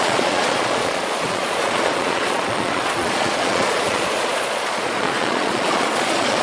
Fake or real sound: fake